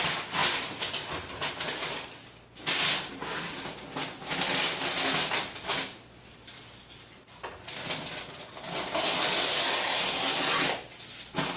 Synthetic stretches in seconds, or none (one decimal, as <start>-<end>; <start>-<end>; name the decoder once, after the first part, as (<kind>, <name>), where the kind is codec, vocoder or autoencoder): none